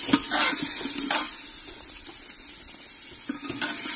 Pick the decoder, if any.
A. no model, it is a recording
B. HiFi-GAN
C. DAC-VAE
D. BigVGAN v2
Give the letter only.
A